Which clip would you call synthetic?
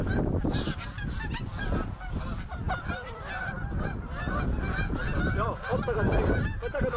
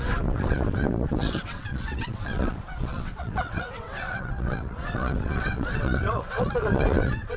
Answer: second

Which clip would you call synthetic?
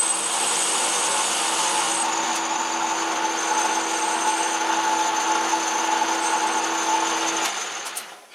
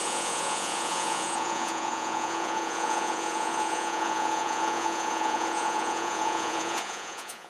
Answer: second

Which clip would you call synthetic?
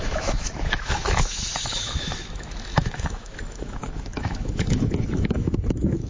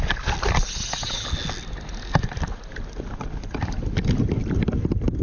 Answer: first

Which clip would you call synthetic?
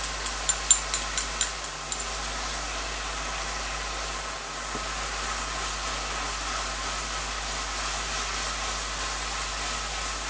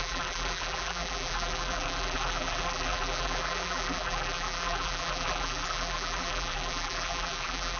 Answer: second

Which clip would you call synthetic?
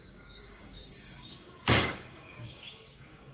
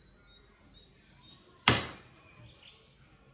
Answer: first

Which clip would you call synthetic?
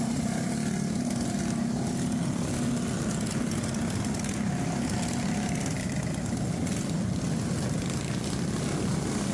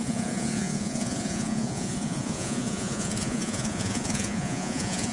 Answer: second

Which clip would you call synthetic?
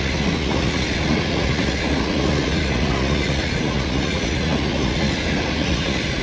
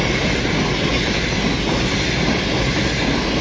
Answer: first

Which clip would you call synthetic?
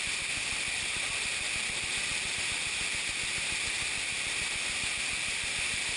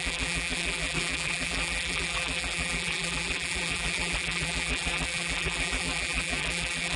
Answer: second